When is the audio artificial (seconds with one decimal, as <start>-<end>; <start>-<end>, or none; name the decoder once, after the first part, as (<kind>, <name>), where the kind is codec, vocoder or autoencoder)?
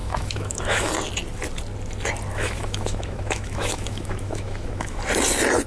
0.0-0.9 (autoencoder, DAC-VAE); 2.3-5.0